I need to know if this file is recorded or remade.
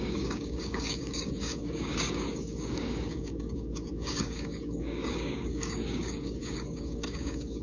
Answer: remade